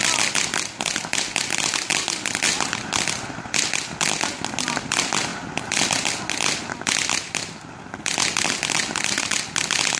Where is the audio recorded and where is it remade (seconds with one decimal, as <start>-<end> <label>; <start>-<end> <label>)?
0.0-10.0 recorded